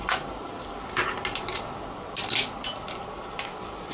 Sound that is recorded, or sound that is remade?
recorded